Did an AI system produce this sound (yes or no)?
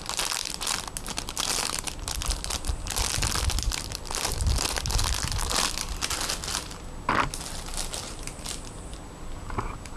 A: no